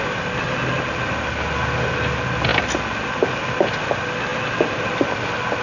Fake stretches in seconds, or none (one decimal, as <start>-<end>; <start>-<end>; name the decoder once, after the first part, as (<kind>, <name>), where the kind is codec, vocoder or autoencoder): none